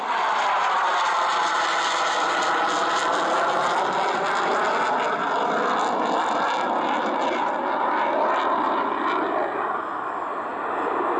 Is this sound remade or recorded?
recorded